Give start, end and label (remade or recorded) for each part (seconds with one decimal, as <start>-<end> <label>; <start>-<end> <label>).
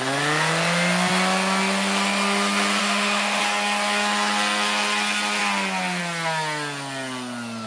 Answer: 0.0-2.8 recorded; 2.8-3.4 remade; 3.4-7.7 recorded